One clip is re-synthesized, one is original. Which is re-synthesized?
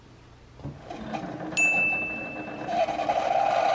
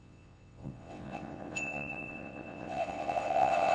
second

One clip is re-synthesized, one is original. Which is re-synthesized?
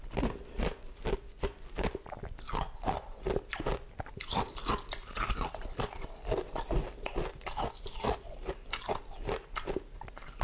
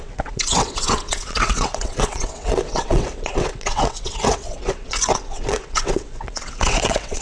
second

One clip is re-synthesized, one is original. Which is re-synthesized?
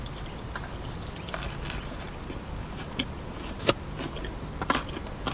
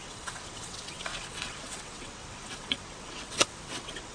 second